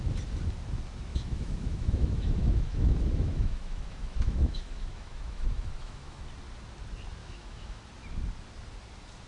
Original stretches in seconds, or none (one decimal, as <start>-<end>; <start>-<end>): 0.0-1.1; 6.2-7.2; 7.8-9.3